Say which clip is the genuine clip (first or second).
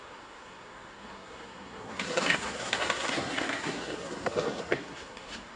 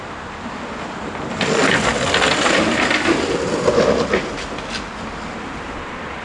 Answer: second